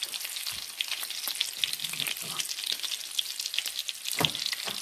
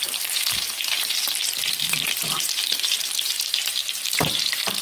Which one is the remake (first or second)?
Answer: second